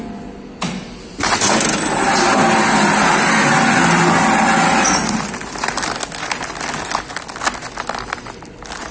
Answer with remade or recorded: recorded